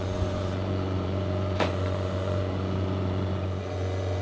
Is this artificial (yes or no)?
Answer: yes